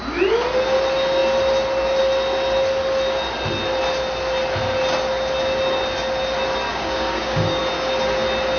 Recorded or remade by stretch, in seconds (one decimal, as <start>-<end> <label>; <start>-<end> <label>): 0.0-6.7 recorded; 6.7-7.6 remade; 7.6-8.6 recorded